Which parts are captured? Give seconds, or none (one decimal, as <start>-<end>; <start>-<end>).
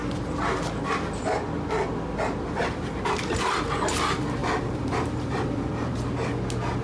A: 0.0-4.4; 5.9-6.8